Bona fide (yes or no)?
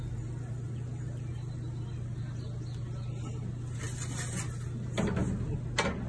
yes